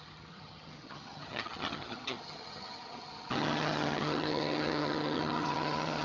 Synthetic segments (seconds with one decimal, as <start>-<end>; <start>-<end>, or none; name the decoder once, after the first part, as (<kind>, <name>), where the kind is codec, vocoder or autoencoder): 0.0-6.0 (vocoder, HiFi-GAN)